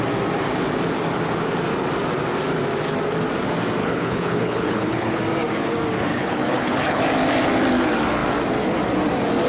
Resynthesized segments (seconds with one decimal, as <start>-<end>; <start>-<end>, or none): 3.8-5.2; 6.1-7.0

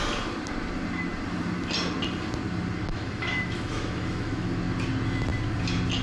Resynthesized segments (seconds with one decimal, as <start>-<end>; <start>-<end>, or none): 2.9-4.6